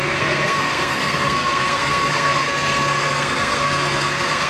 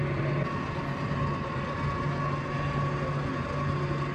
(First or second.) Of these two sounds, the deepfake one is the first